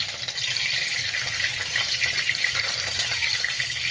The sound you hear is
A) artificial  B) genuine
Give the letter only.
B